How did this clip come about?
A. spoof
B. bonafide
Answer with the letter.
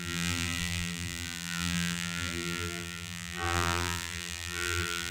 A